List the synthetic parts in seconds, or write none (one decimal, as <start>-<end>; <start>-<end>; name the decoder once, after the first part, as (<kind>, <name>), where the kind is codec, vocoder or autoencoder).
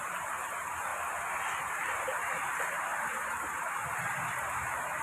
0.0-0.9 (vocoder, BigVGAN v2); 1.6-5.0